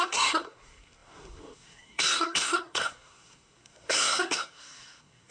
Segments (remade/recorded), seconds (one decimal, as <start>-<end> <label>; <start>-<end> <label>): 0.0-5.3 remade